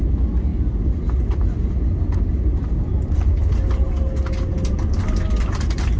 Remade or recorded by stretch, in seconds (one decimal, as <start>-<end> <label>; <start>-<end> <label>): 0.0-6.0 recorded